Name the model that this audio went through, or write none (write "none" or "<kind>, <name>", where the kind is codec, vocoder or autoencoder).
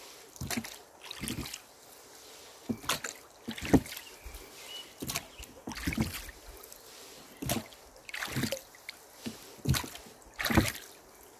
none